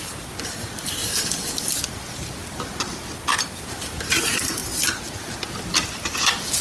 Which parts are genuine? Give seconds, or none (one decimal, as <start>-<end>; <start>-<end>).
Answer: 0.0-6.6

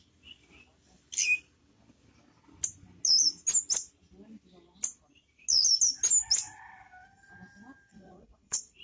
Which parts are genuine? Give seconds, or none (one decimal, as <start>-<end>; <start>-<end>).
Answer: 0.0-7.9

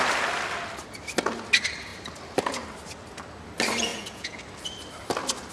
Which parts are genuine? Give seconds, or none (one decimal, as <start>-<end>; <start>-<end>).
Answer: 0.0-3.9; 4.4-5.5

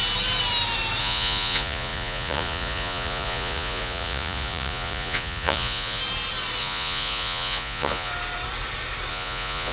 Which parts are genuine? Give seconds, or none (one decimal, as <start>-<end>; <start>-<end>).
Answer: 0.0-1.0; 6.0-6.6; 8.1-9.1